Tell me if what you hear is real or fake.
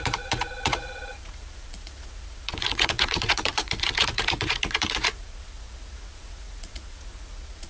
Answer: fake